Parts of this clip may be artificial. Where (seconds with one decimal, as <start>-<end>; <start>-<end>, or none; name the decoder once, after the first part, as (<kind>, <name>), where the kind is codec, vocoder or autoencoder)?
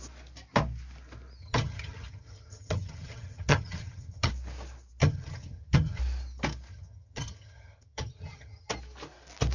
1.4-4.3 (vocoder, HiFi-GAN); 5.0-6.0; 6.7-8.7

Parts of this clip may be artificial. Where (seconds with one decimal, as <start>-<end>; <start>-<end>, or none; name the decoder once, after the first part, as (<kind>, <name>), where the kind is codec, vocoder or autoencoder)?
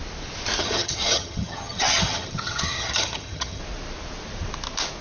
0.6-3.6 (vocoder, HiFi-GAN)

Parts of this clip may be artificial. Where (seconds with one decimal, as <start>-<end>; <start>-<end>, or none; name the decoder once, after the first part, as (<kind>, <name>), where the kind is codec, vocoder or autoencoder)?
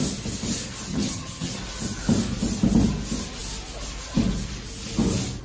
0.9-1.5 (vocoder, HiFi-GAN)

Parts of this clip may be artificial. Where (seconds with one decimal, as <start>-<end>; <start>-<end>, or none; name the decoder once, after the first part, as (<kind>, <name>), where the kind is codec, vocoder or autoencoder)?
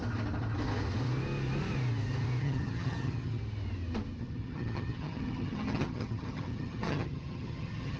2.4-3.4 (vocoder, HiFi-GAN); 4.2-8.0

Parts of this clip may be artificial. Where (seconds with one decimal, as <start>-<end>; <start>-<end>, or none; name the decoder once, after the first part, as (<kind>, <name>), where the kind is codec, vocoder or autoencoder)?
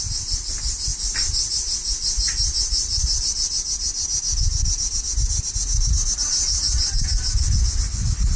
none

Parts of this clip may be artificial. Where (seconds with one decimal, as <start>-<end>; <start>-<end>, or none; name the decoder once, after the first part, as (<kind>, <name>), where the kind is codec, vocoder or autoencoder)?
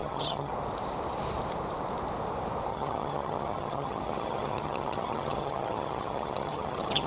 0.0-0.5 (vocoder, HiFi-GAN); 2.7-7.1